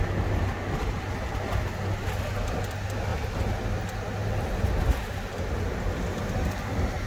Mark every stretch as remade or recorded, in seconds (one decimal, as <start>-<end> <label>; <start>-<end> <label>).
0.0-7.1 recorded